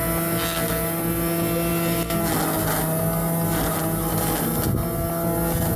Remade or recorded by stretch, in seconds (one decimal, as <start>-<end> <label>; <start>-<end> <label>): 0.0-5.8 recorded